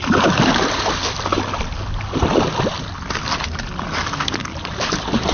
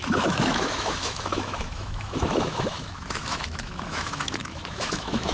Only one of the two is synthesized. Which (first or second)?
second